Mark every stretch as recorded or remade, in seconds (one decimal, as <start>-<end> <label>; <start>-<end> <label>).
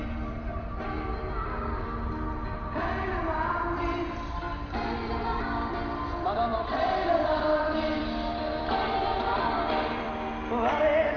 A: 0.0-6.5 recorded; 6.5-10.1 remade; 10.1-11.2 recorded